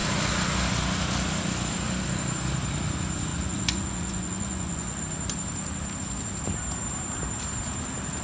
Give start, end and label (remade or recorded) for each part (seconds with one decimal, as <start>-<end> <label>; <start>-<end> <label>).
0.0-3.3 recorded; 3.3-5.0 remade; 5.0-8.2 recorded

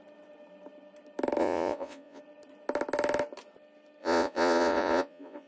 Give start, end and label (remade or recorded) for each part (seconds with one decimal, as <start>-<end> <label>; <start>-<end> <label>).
0.0-1.4 recorded; 1.4-2.2 remade; 2.2-4.0 recorded; 4.0-5.5 remade

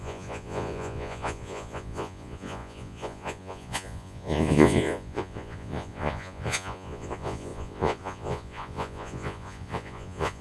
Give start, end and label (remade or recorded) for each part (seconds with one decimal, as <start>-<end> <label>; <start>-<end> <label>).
0.0-10.4 remade

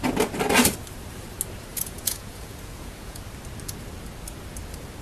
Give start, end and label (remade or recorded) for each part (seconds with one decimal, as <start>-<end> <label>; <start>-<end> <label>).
0.0-1.7 recorded; 1.7-3.2 remade; 3.2-5.0 recorded

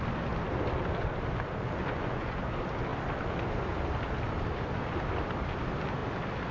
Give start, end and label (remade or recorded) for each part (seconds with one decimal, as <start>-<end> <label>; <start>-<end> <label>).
0.0-1.8 recorded; 1.8-2.4 remade; 2.4-6.5 recorded

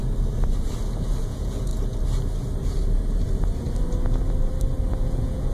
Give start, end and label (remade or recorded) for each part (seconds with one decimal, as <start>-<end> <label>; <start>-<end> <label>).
0.0-1.2 recorded; 1.2-1.7 remade; 1.7-4.9 recorded; 4.9-5.5 remade

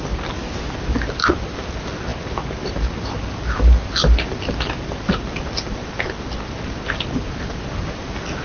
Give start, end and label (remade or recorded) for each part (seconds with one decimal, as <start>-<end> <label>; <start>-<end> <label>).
0.0-8.4 recorded

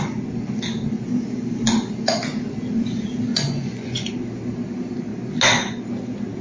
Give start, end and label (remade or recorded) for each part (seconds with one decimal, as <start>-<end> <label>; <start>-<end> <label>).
0.0-3.3 recorded; 3.3-4.2 remade; 4.2-6.4 recorded